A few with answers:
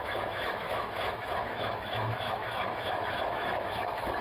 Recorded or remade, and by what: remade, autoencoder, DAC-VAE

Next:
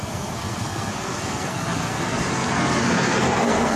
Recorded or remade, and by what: remade, codec, SNAC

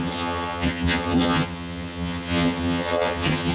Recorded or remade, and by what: remade, vocoder, HiFi-GAN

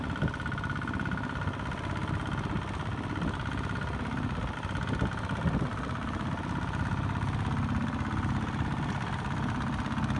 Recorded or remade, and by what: recorded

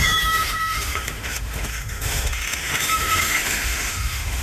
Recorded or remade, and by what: remade, autoencoder, DAC-VAE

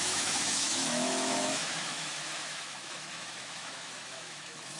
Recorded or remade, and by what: remade, autoencoder, DAC-VAE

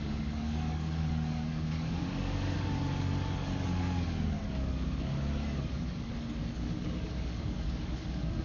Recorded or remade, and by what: remade, codec, DAC